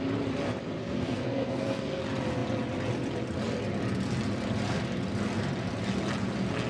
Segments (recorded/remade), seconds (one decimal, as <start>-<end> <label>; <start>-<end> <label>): 0.0-0.8 recorded; 0.8-2.0 remade; 2.0-6.7 recorded